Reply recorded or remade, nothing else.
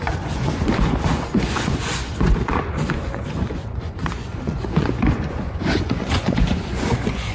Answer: remade